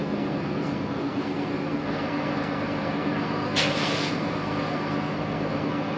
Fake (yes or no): yes